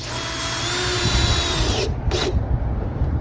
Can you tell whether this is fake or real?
real